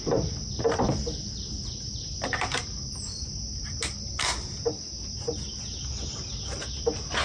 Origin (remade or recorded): recorded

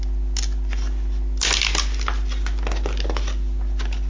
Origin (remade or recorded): recorded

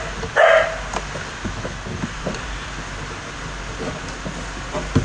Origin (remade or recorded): recorded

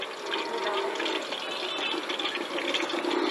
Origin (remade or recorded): recorded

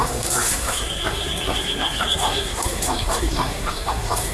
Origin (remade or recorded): remade